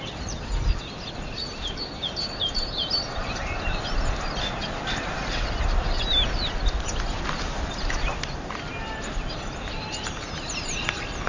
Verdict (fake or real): real